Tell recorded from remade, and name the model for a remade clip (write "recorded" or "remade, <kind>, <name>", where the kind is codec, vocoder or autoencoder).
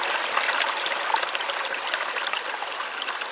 recorded